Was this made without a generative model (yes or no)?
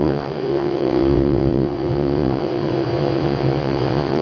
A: no